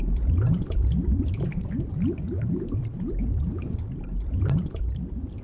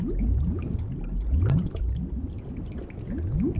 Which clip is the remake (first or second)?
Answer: first